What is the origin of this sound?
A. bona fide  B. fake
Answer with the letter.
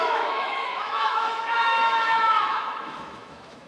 B